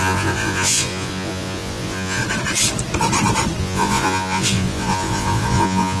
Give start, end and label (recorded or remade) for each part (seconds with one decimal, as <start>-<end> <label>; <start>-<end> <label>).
0.0-2.2 remade; 2.2-3.6 recorded; 3.6-6.0 remade